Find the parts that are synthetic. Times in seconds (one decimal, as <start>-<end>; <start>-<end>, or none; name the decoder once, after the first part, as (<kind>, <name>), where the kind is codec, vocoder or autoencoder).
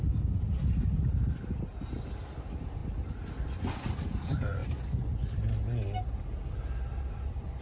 none